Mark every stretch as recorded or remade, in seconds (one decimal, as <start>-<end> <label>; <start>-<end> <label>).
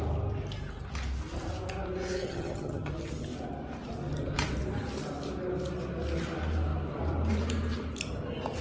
0.0-2.2 recorded; 2.2-2.9 remade; 2.9-8.6 recorded